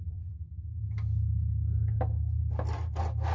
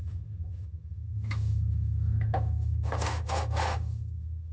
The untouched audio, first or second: first